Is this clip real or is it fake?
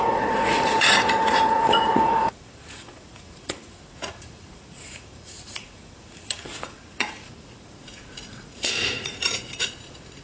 fake